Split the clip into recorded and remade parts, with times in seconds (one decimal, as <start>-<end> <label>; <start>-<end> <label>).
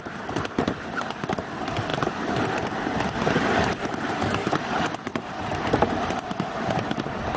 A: 0.0-7.4 recorded